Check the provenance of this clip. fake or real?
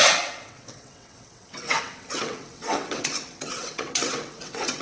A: fake